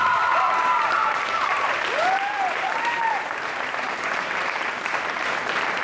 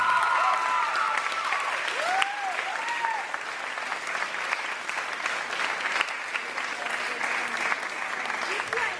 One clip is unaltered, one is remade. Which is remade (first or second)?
first